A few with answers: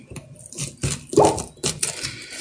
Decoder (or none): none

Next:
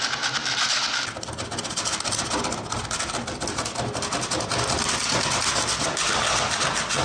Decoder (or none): none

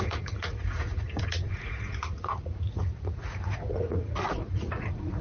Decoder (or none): vocoder, Vocos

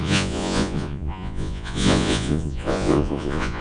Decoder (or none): vocoder, Vocos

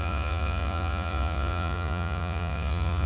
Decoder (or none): vocoder, Vocos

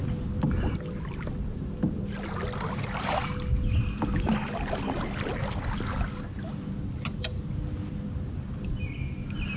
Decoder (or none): none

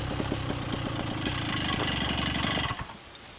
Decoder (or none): none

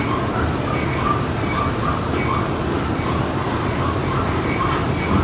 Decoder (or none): none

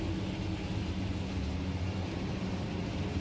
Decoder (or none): none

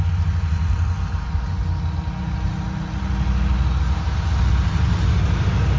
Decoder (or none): none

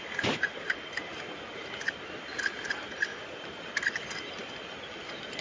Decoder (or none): none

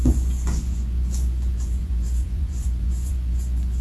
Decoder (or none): vocoder, Vocos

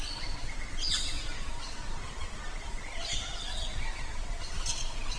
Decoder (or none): vocoder, Vocos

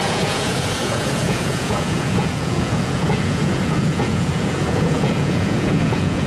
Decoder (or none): vocoder, Vocos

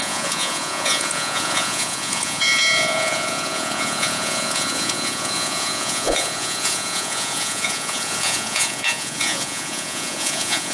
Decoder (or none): vocoder, Vocos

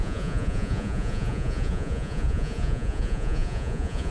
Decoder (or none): vocoder, Vocos